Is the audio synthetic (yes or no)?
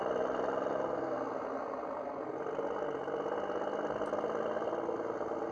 no